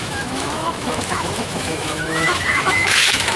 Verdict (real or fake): fake